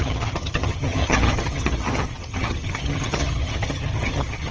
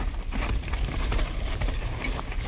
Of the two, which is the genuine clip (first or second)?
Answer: second